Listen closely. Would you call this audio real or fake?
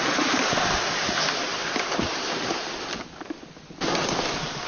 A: real